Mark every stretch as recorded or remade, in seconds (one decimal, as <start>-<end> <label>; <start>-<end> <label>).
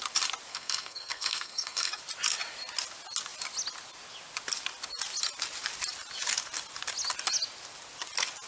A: 0.0-0.5 recorded; 0.5-2.0 remade; 2.0-8.5 recorded